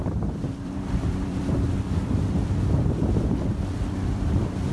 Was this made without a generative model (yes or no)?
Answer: no